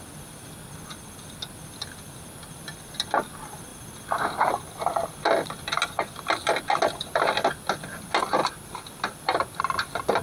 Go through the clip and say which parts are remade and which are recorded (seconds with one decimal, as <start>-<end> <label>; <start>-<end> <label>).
0.0-8.4 recorded; 8.4-9.6 remade; 9.6-10.2 recorded